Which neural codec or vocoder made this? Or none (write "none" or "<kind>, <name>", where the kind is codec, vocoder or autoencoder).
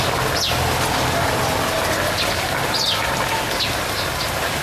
none